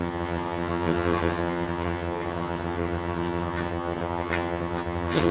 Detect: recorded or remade remade